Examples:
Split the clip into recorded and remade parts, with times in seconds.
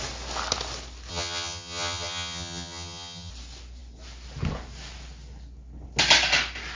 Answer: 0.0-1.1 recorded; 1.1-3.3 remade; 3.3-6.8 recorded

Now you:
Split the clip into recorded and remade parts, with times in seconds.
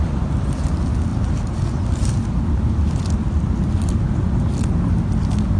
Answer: 0.0-5.6 recorded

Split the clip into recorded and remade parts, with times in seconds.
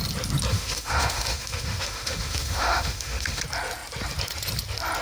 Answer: 0.0-0.5 recorded; 0.5-3.4 remade; 3.4-5.0 recorded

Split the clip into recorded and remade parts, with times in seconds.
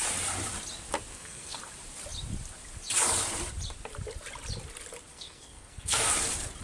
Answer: 0.0-1.1 recorded; 1.1-1.6 remade; 1.6-5.1 recorded; 5.1-6.1 remade; 6.1-6.6 recorded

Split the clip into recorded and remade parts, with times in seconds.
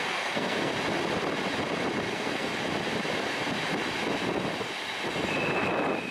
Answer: 0.0-0.7 remade; 0.7-2.1 recorded; 2.1-2.5 remade; 2.5-6.1 recorded